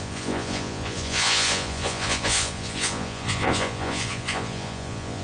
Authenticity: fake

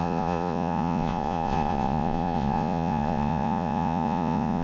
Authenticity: fake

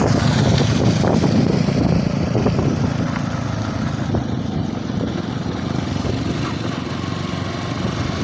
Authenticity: real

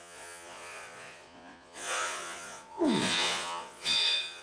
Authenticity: fake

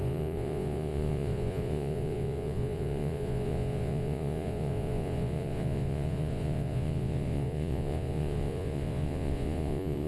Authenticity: fake